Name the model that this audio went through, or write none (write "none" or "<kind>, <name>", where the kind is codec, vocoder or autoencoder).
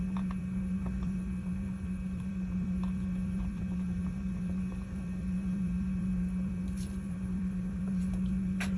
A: vocoder, BigVGAN v2